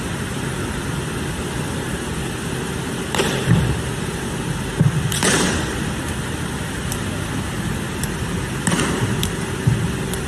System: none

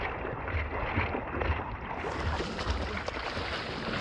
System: none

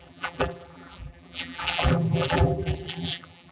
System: vocoder, BigVGAN v2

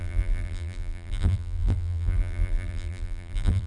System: vocoder, BigVGAN v2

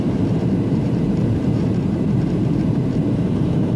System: vocoder, BigVGAN v2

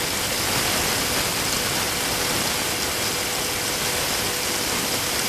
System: none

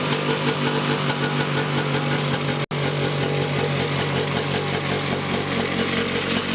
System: none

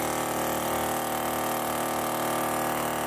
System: none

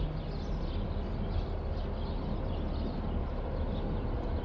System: none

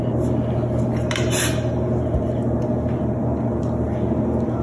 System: none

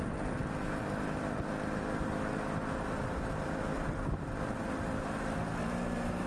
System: vocoder, BigVGAN v2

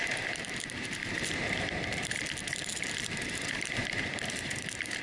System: vocoder, BigVGAN v2